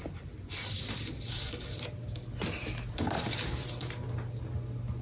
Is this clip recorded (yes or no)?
yes